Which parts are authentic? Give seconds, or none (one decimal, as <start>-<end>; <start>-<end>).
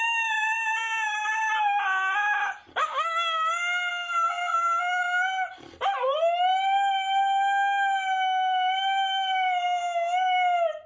0.0-2.8; 3.5-10.9